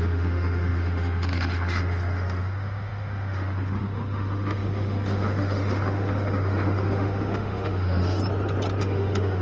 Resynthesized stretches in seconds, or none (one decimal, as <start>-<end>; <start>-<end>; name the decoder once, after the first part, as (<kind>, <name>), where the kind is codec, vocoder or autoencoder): 0.0-8.2 (autoencoder, DAC-VAE); 8.8-9.4